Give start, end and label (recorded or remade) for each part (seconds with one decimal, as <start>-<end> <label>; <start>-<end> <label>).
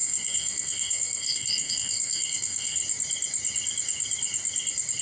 0.0-2.8 remade; 2.8-5.0 recorded